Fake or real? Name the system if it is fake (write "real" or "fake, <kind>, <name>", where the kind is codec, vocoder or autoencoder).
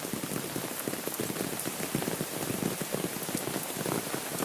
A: real